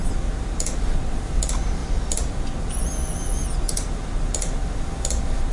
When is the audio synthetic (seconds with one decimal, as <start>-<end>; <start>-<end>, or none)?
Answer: none